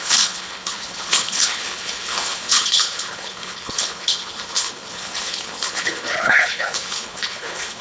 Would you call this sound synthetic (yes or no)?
yes